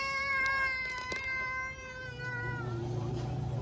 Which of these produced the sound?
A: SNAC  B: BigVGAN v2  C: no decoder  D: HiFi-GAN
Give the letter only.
B